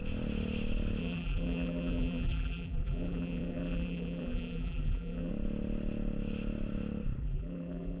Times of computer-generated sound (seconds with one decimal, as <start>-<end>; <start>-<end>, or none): 1.0-5.3; 7.2-8.0